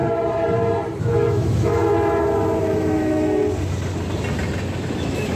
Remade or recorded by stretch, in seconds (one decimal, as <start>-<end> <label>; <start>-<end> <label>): 0.0-1.0 recorded; 1.0-1.8 remade; 1.8-2.6 recorded; 2.6-3.4 remade; 3.4-5.0 recorded; 5.0-5.4 remade